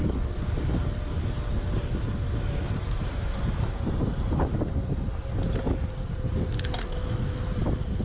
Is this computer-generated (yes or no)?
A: no